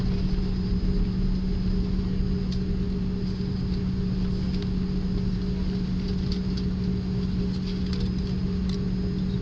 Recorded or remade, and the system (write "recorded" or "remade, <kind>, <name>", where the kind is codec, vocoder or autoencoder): recorded